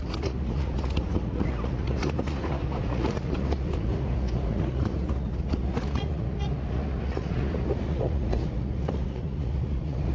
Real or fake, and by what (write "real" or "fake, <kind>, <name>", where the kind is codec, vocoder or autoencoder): fake, vocoder, Vocos